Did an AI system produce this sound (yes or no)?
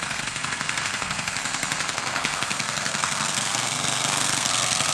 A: yes